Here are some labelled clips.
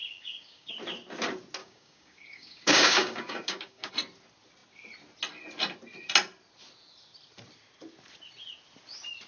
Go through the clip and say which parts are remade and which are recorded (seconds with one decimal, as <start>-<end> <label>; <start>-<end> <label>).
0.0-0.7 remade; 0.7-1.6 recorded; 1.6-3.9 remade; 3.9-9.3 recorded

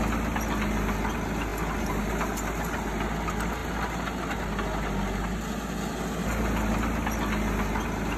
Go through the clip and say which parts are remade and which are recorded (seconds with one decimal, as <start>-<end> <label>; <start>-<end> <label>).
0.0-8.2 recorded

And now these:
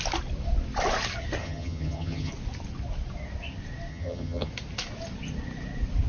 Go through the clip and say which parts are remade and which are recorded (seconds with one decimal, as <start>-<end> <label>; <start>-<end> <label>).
0.0-1.4 recorded; 1.4-2.3 remade; 2.3-3.9 recorded; 3.9-4.5 remade; 4.5-6.1 recorded

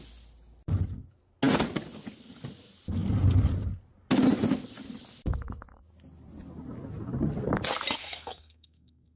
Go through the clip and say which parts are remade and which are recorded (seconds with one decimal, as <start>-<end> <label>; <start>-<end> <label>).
0.0-8.0 recorded; 8.0-9.2 remade

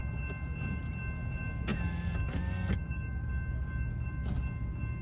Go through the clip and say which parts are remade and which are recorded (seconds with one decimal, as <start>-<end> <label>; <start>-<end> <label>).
0.0-5.0 recorded

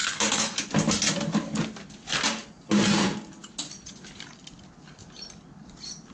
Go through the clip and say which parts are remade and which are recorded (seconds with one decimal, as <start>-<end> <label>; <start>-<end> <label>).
0.0-0.7 remade; 0.7-6.1 recorded

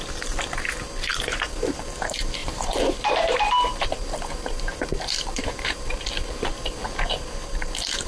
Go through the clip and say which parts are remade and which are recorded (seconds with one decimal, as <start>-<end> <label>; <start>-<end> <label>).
0.0-1.1 recorded; 1.1-1.8 remade; 1.8-2.4 recorded; 2.4-6.0 remade; 6.0-8.1 recorded

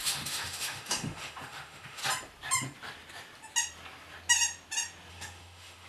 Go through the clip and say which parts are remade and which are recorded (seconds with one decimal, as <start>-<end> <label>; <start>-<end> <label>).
0.0-2.0 remade; 2.0-5.1 recorded; 5.1-5.9 remade